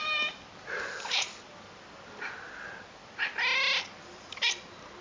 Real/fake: real